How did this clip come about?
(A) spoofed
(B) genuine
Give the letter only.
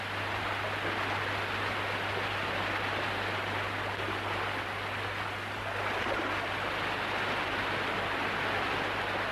B